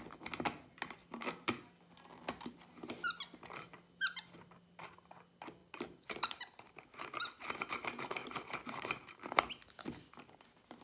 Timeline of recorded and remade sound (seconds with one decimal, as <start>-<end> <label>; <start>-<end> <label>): 0.0-5.6 recorded; 5.6-7.2 remade; 7.2-8.2 recorded; 8.2-9.5 remade; 9.5-10.8 recorded